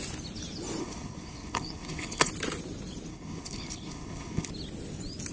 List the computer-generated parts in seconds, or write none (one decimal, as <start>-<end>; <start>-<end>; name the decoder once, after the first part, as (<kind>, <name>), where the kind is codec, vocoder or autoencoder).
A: 0.8-2.3 (codec, HILCodec); 3.1-4.5